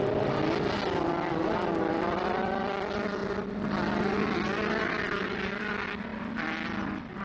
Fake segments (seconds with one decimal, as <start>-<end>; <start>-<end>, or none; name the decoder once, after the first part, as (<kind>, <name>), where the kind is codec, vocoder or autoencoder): none